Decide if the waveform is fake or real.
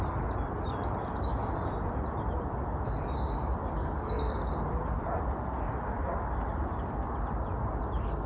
real